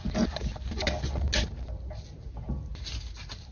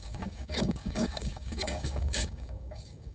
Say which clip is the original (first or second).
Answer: first